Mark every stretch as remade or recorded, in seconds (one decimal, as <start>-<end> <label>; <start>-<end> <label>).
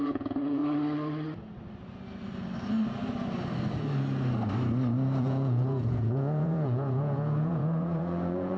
0.0-0.6 remade; 0.6-5.2 recorded; 5.2-8.6 remade